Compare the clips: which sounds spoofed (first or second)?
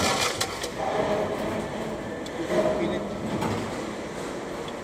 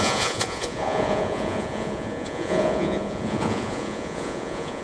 second